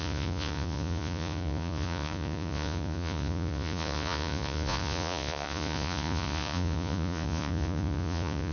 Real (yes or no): no